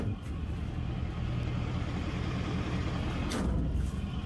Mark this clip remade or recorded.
recorded